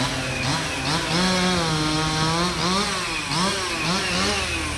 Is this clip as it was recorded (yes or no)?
yes